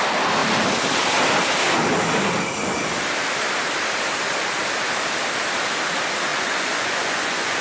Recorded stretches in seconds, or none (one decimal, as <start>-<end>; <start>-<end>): 0.0-6.3

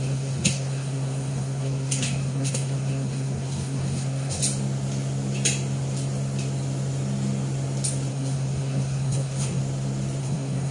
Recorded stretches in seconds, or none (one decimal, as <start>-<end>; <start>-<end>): 4.4-8.1; 9.6-10.2